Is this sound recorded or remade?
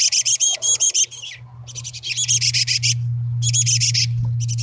recorded